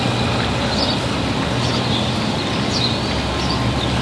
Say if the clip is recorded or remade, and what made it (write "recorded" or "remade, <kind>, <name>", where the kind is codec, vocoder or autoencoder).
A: recorded